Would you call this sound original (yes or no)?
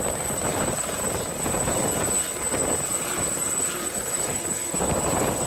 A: yes